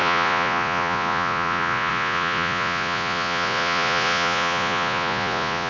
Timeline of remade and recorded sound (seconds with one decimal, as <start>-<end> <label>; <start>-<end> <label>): 0.0-5.7 remade